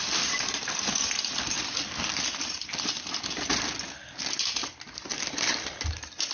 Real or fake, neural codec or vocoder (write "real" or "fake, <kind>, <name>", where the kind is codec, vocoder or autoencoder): fake, vocoder, BigVGAN v2